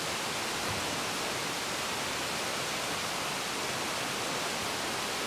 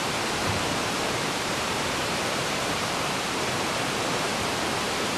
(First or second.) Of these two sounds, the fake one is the second